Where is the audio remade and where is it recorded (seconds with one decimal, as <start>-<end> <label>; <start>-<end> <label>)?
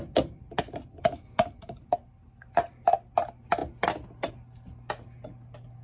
0.0-5.8 recorded